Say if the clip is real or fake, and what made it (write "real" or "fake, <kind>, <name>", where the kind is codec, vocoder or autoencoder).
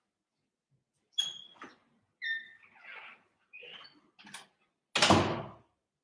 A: real